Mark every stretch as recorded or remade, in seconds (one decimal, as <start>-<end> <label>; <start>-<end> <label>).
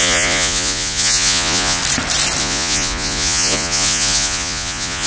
0.0-1.8 remade; 1.8-2.4 recorded; 2.4-5.1 remade